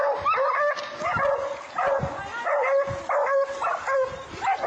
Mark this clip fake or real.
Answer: real